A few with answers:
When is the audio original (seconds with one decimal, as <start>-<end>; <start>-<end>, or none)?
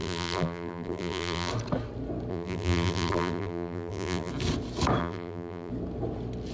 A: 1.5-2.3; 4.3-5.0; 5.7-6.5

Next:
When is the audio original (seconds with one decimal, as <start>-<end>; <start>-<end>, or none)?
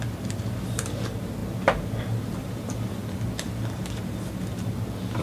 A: 1.4-2.0; 3.0-5.2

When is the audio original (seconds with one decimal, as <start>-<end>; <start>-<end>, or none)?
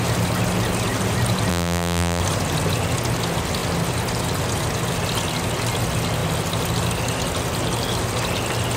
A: 0.0-1.5; 2.2-8.8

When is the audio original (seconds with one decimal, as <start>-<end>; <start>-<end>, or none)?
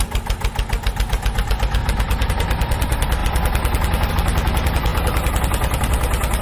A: 0.0-1.8; 2.3-6.4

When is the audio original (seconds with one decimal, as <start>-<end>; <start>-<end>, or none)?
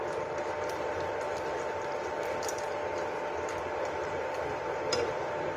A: 2.8-3.6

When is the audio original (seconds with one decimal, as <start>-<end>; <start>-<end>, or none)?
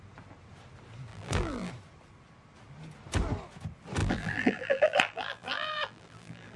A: 0.0-1.1; 1.7-4.0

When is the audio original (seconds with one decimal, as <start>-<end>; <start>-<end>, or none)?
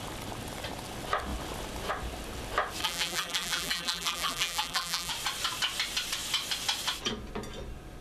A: 0.0-2.8; 5.1-8.0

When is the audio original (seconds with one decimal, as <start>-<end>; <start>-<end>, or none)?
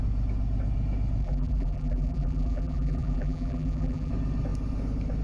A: 0.0-1.2; 4.1-5.2